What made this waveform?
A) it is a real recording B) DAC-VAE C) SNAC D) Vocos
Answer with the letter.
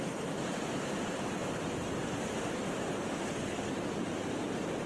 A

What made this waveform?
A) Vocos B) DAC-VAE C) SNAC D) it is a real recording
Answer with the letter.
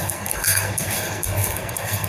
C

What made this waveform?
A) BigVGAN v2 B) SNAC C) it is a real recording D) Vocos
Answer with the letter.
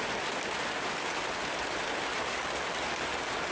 C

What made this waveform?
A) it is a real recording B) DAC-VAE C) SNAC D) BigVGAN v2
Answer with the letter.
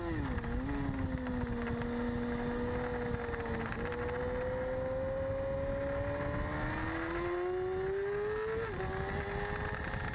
A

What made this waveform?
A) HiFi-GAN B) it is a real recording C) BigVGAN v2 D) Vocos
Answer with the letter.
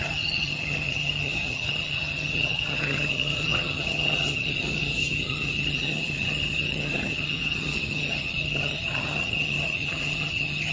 A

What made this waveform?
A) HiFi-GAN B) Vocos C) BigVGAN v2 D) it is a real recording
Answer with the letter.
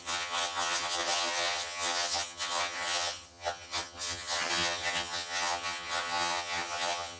A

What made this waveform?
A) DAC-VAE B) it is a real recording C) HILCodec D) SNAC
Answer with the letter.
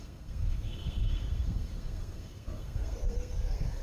D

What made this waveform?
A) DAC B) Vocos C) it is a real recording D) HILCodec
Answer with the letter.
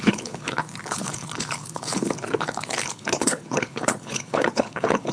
D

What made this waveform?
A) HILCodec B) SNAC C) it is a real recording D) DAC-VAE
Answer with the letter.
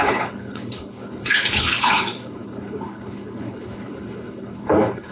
A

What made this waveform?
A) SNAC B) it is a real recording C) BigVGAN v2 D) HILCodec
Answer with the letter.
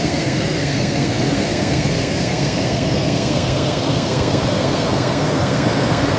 A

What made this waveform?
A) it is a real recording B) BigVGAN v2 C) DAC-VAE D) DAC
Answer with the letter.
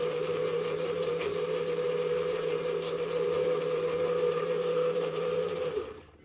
B